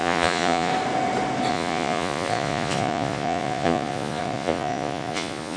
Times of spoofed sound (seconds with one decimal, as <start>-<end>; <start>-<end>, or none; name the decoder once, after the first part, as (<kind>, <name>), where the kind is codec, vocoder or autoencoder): 0.0-0.7 (vocoder, Vocos); 1.5-5.6